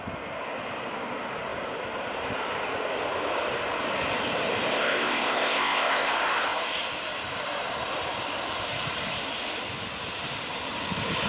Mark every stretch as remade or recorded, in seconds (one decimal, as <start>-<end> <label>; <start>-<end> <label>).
0.0-4.7 recorded; 4.7-6.1 remade; 6.1-11.3 recorded